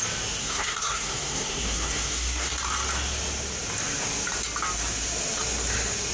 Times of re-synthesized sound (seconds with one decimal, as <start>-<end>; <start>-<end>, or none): 0.4-2.5